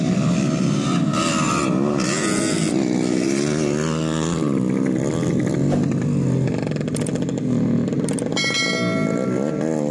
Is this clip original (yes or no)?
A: yes